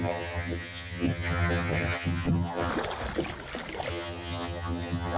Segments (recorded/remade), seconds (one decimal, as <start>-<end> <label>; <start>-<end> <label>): 0.0-2.7 remade; 2.7-3.9 recorded; 3.9-5.2 remade